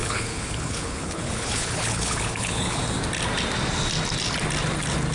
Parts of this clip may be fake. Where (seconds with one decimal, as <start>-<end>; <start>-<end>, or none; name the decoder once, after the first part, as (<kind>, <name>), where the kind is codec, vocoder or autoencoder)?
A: 0.0-2.8 (codec, HILCodec)